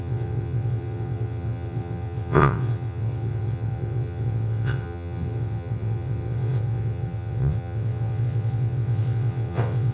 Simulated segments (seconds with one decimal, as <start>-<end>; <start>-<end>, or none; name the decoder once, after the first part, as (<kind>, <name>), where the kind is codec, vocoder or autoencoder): 0.0-9.9 (vocoder, WaveNeXt)